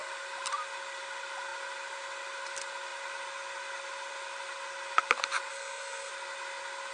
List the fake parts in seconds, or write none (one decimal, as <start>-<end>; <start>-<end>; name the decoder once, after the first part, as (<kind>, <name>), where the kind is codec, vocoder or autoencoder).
5.5-6.1 (codec, SNAC)